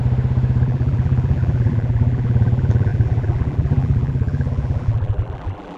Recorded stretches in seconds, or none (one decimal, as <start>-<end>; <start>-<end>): 0.0-0.6